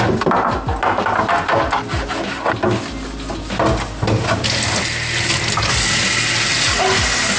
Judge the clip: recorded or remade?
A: recorded